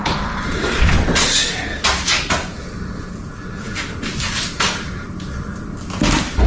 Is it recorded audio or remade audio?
recorded